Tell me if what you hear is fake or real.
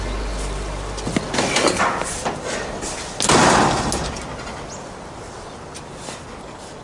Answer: real